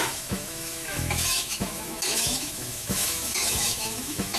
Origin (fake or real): fake